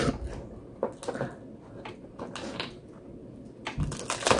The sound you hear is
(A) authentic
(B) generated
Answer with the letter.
A